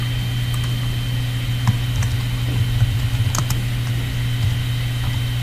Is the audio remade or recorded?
recorded